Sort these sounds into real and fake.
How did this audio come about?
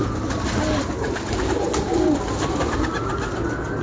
real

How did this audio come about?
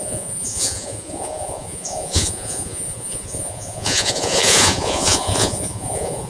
fake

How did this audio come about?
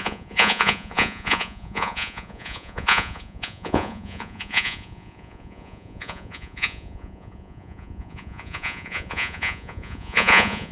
fake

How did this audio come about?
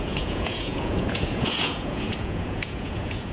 fake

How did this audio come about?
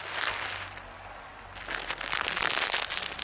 real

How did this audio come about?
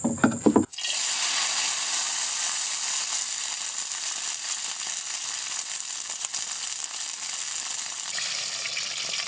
real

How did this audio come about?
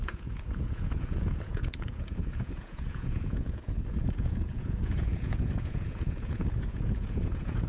fake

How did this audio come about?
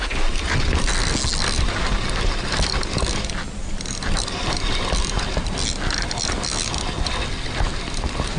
real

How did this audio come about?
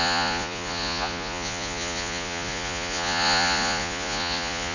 fake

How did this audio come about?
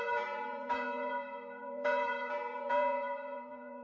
fake